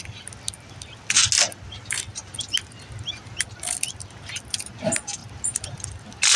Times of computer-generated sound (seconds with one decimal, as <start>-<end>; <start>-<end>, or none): none